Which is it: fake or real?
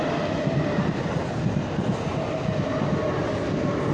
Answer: real